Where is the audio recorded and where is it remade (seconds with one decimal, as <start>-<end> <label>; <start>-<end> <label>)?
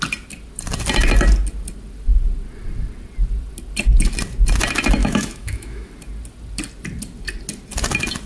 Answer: 0.0-5.0 recorded; 5.0-5.9 remade; 5.9-8.3 recorded